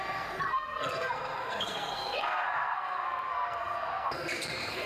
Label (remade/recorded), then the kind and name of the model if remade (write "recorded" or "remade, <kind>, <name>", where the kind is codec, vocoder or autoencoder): remade, codec, SNAC